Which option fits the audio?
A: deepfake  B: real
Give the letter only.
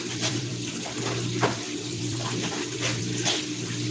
A